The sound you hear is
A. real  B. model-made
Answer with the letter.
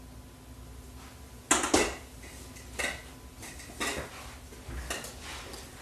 A